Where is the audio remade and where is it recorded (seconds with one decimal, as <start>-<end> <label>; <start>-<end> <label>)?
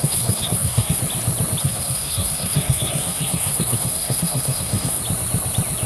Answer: 0.0-1.0 remade; 1.0-1.6 recorded; 1.6-5.0 remade; 5.0-5.9 recorded